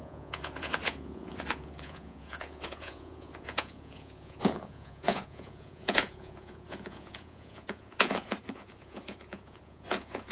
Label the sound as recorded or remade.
remade